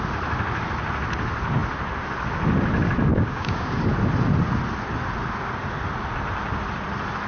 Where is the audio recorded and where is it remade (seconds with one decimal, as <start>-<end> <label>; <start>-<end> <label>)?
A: 0.0-3.1 recorded; 3.1-3.8 remade; 3.8-7.3 recorded